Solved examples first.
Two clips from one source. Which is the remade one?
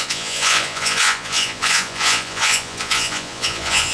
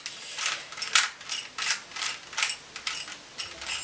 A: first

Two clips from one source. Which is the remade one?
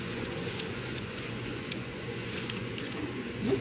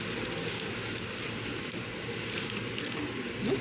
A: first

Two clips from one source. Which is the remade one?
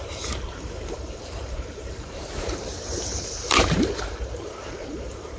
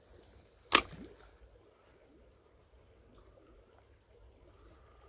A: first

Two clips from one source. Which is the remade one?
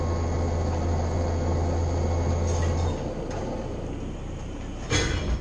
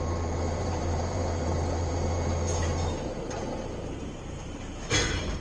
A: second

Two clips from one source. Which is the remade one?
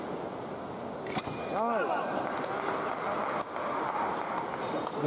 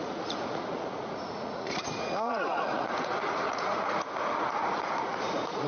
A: second